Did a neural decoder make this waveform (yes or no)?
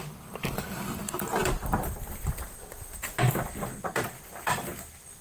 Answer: yes